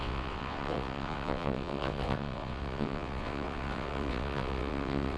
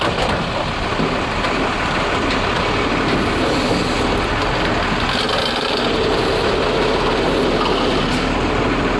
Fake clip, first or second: first